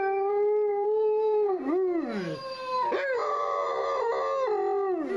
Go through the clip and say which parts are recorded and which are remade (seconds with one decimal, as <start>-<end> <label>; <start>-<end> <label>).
0.0-0.7 recorded; 0.7-1.6 remade; 1.6-3.2 recorded; 3.2-3.8 remade; 3.8-5.2 recorded